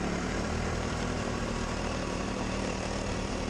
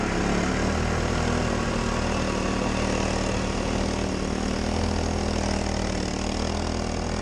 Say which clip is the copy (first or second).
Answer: first